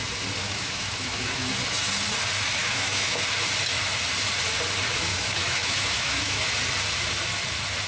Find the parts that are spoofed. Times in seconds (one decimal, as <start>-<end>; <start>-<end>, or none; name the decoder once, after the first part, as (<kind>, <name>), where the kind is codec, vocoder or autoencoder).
0.4-1.5 (autoencoder, DAC-VAE); 2.6-3.2; 5.1-6.4